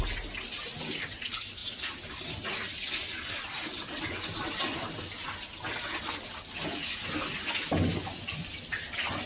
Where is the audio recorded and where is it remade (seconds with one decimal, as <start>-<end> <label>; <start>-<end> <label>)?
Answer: 0.0-9.3 recorded